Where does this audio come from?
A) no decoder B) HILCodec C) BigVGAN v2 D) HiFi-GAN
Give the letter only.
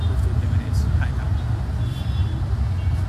A